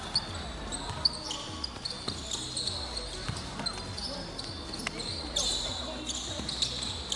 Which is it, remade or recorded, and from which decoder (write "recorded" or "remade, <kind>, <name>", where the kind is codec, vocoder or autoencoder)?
recorded